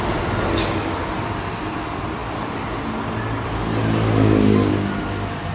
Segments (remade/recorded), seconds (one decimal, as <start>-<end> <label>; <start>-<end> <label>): 0.0-5.5 recorded